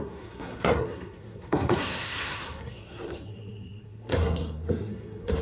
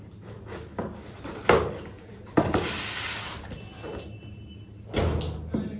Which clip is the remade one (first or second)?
first